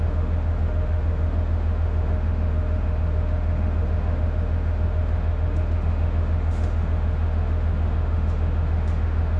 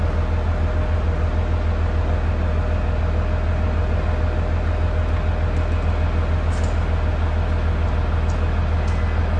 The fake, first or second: first